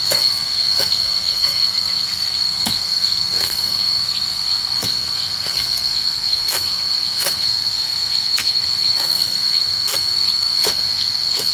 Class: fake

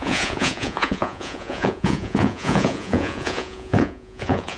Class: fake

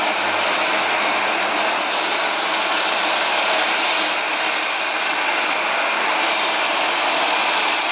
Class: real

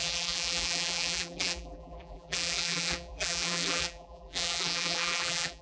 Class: fake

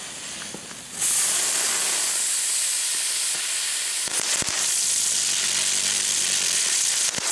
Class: real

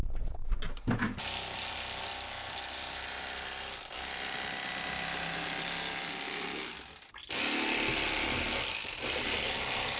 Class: real